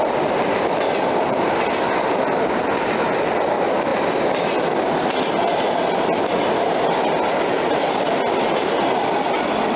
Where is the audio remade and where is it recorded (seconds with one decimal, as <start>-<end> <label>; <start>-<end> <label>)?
0.0-9.8 recorded